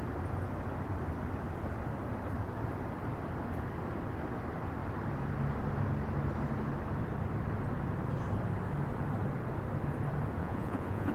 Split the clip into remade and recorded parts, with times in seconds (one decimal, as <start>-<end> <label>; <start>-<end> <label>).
0.0-10.4 recorded; 10.4-11.1 remade